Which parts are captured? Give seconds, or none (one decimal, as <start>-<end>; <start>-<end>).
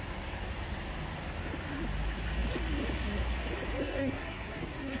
0.0-3.8